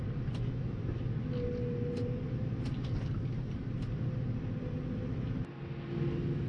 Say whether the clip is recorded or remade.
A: recorded